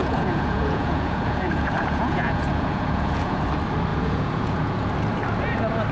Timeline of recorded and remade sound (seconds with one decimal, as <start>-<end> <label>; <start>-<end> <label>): 0.0-3.5 remade; 3.5-3.9 recorded; 3.9-4.9 remade; 4.9-5.9 recorded

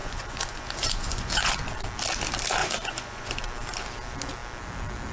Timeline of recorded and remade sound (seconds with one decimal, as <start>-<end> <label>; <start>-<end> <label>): 0.0-1.5 remade; 1.5-2.6 recorded; 2.6-3.4 remade; 3.4-5.1 recorded

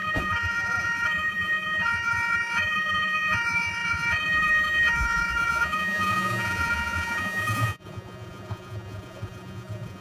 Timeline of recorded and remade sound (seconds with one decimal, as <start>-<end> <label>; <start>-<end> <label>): 0.0-10.0 remade

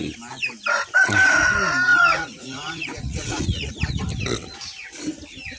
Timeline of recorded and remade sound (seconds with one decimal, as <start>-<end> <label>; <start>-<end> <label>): 0.0-1.9 recorded; 1.9-3.7 remade; 3.7-5.6 recorded

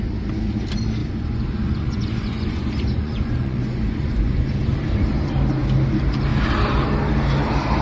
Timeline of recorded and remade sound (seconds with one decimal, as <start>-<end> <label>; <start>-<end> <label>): 0.0-1.0 recorded; 1.0-4.5 remade; 4.5-7.8 recorded

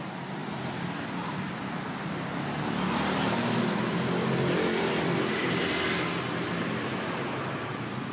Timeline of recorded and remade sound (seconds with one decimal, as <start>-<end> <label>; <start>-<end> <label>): 0.0-8.1 recorded

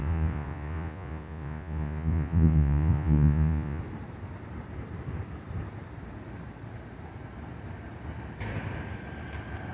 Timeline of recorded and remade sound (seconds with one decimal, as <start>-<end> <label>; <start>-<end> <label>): 0.0-3.8 remade; 3.8-9.7 recorded